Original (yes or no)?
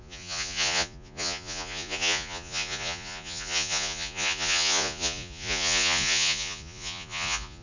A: no